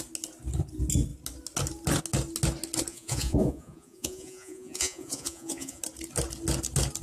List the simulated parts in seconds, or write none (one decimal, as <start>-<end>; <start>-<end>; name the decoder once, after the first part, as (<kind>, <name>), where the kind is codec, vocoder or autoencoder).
2.9-5.8 (vocoder, Vocos)